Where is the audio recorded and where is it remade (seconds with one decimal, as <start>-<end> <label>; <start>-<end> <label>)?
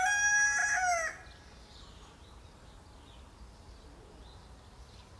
0.0-5.2 recorded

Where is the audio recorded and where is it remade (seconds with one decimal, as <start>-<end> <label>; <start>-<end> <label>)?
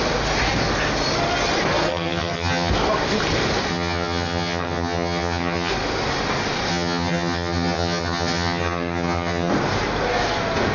0.0-1.9 recorded; 1.9-2.7 remade; 2.7-3.7 recorded; 3.7-5.7 remade; 5.7-6.7 recorded; 6.7-9.5 remade; 9.5-10.7 recorded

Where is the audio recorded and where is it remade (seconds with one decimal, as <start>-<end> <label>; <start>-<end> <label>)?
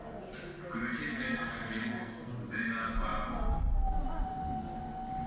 0.0-1.1 recorded; 1.1-2.3 remade; 2.3-5.3 recorded